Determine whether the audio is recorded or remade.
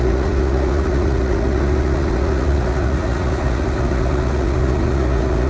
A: remade